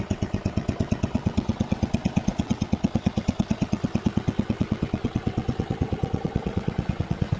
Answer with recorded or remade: remade